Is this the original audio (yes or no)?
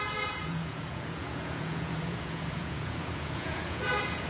no